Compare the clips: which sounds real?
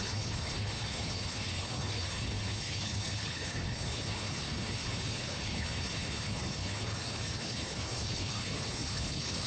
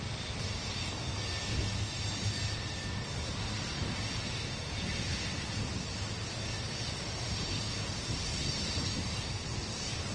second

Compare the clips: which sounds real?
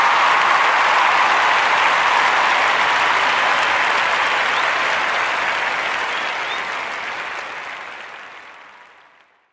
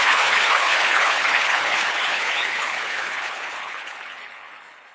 first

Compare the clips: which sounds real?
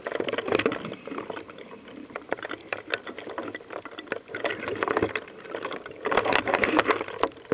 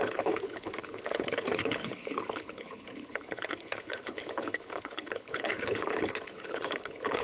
first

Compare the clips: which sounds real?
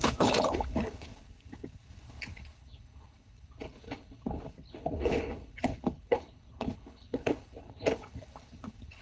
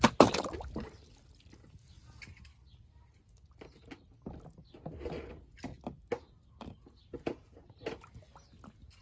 second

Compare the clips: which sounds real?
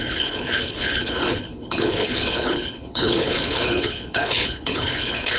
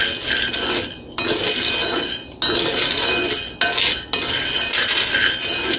second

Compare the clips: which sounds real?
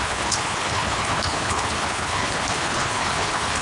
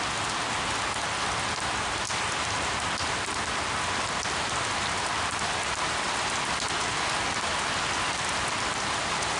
second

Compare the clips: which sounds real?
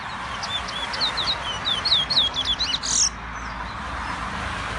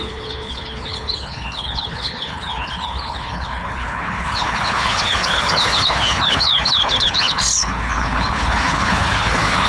first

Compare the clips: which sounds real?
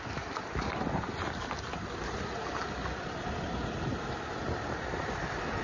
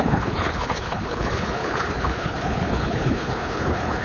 first